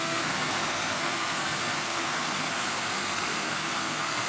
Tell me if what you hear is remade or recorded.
remade